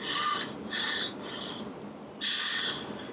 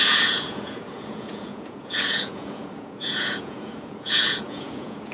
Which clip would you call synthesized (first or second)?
second